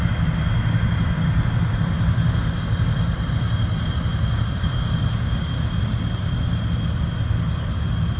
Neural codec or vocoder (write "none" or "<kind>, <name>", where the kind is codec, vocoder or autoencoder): none